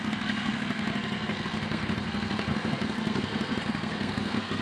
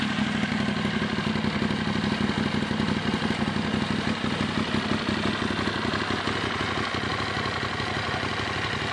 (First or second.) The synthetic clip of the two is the first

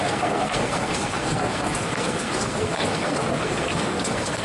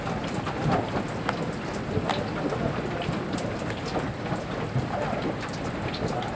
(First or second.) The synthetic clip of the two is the first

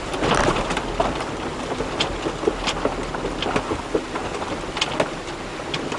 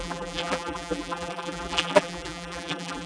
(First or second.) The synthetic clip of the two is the second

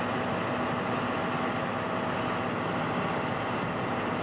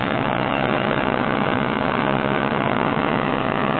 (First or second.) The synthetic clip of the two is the second